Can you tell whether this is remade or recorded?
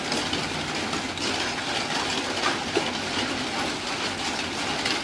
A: recorded